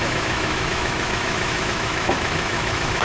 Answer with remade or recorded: remade